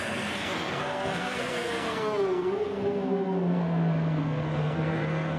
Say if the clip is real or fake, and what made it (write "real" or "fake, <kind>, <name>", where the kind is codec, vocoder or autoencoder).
fake, codec, SNAC